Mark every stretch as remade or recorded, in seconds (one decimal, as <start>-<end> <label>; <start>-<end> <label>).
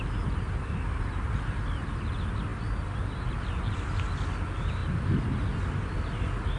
0.0-6.6 recorded